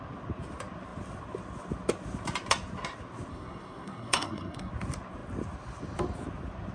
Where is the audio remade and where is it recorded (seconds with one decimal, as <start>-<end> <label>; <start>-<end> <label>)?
0.0-3.3 recorded; 3.3-4.7 remade; 4.7-6.7 recorded